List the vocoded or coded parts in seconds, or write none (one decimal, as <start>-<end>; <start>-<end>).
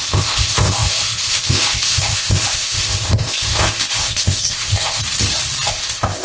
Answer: 0.0-5.0; 5.7-6.2